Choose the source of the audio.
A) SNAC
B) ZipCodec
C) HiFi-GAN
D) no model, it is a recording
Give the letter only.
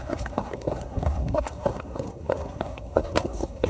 A